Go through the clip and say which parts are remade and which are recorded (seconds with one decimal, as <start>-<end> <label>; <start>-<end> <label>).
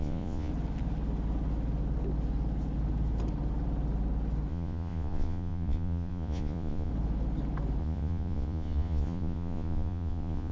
0.0-0.5 remade; 0.5-4.5 recorded; 4.5-6.9 remade; 6.9-7.8 recorded; 7.8-10.5 remade